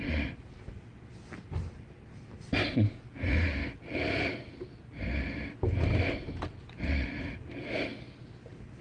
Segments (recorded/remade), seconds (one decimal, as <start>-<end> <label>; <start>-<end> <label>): 0.0-3.6 recorded; 3.6-4.8 remade; 4.8-8.8 recorded